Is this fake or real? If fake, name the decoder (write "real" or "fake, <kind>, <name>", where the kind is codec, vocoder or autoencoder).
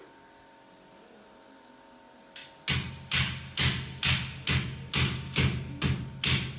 real